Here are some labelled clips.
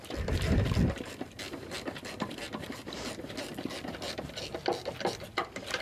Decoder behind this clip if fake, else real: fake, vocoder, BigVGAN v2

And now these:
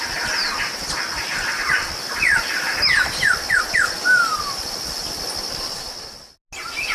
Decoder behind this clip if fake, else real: real